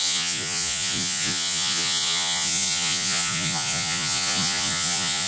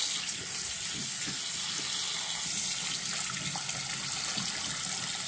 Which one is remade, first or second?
first